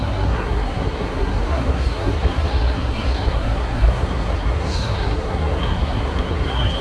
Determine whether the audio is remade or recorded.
remade